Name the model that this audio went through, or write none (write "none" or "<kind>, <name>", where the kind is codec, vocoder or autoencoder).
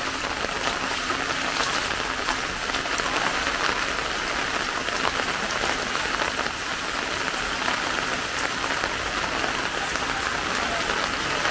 none